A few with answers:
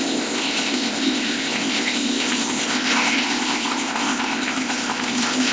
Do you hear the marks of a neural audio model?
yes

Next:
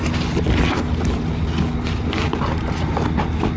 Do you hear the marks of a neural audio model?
no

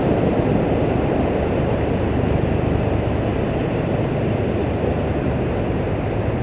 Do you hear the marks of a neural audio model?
no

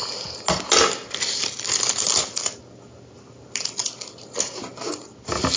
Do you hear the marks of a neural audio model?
no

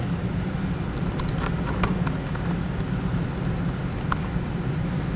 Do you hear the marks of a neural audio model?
no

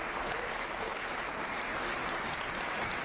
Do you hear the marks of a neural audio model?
no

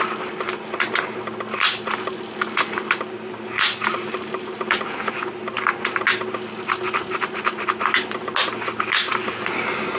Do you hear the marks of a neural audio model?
no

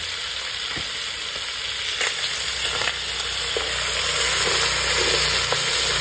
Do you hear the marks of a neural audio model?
no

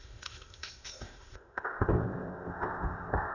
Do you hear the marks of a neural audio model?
yes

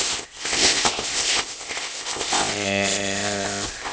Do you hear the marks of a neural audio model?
yes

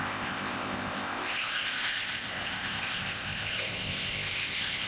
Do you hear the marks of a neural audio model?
yes